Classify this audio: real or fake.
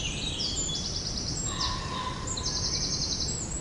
real